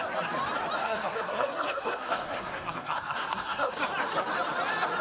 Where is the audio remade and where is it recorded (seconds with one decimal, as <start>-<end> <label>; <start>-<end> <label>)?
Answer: 0.0-0.8 recorded; 0.8-3.8 remade; 3.8-5.0 recorded